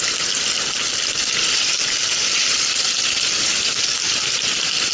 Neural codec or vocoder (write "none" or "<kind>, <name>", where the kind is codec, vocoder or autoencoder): none